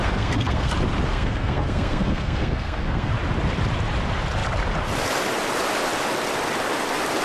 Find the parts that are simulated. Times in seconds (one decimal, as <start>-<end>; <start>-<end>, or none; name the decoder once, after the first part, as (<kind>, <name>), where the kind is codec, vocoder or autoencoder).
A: 0.0-0.7 (codec, SNAC); 1.1-3.1